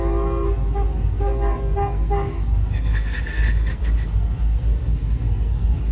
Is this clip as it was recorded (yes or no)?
no